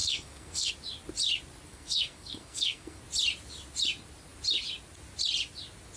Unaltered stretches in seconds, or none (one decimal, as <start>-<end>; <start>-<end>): 0.7-1.7; 3.0-6.0